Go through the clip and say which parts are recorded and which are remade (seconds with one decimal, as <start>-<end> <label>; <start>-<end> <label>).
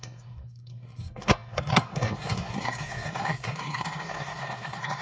0.0-5.0 remade